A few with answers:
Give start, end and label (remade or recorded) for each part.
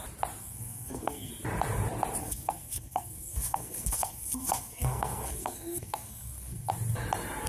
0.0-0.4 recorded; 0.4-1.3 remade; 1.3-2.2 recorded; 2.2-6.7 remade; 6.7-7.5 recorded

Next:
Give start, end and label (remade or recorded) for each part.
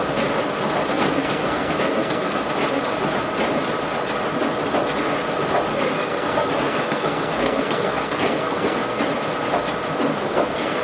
0.0-0.9 recorded; 0.9-2.4 remade; 2.4-5.7 recorded; 5.7-9.0 remade; 9.0-10.1 recorded; 10.1-10.8 remade